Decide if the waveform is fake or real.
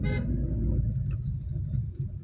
real